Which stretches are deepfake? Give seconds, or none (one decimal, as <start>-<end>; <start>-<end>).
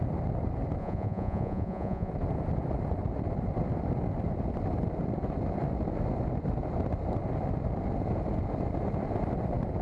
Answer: 0.8-2.1